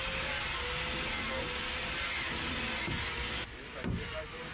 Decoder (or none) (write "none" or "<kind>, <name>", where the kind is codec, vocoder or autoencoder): none